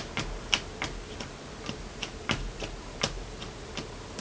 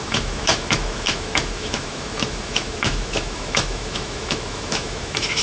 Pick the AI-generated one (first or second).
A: second